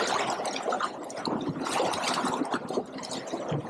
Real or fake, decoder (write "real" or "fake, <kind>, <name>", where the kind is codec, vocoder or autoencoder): real